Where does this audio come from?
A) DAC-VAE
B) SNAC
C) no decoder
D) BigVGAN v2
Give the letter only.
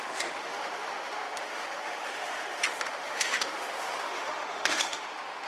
A